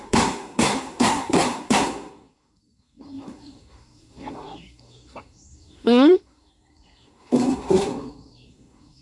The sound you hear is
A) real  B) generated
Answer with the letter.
B